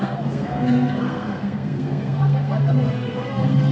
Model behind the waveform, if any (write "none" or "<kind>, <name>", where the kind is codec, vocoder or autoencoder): codec, SNAC